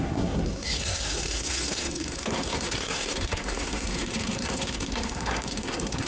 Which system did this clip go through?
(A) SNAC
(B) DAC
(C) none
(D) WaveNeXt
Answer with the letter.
A